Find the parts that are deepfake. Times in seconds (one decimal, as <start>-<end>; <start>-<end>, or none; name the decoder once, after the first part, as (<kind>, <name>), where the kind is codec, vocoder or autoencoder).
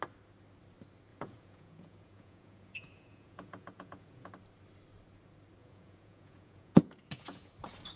1.1-4.3 (vocoder, Vocos); 5.6-7.5